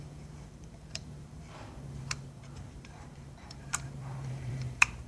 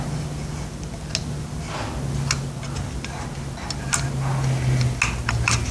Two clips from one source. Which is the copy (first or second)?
first